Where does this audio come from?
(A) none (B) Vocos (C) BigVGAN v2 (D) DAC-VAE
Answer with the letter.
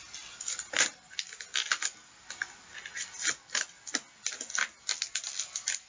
A